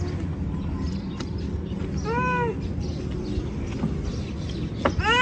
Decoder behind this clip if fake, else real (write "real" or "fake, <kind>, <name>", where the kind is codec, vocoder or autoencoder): real